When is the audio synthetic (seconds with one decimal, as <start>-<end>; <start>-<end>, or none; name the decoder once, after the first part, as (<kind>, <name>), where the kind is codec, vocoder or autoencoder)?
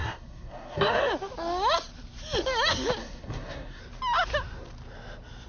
0.0-1.1 (codec, SNAC); 3.0-3.8